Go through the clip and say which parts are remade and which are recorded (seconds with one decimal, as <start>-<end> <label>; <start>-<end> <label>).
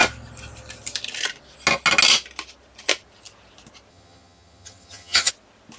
0.0-3.9 recorded; 3.9-5.3 remade; 5.3-5.8 recorded